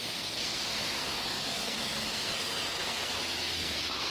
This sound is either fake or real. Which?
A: fake